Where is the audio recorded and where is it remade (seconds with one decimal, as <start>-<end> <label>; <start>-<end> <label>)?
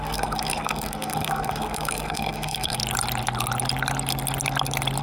0.0-2.8 remade; 2.8-5.0 recorded